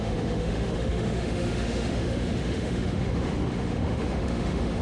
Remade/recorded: remade